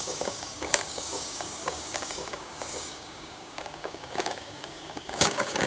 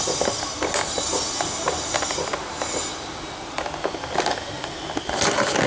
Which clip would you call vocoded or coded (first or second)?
first